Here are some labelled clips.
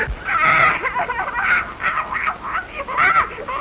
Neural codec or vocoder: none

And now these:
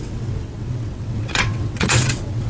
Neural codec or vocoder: vocoder, WaveNeXt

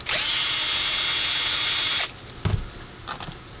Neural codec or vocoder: none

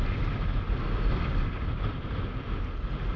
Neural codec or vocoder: none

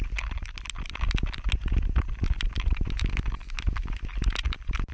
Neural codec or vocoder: none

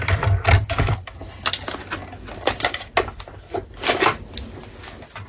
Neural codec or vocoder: none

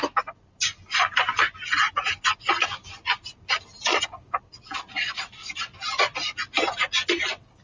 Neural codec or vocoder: none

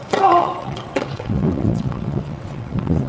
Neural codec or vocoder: vocoder, WaveNeXt